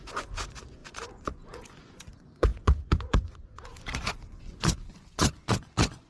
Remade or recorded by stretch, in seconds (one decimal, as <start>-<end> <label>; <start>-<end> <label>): 0.0-6.1 remade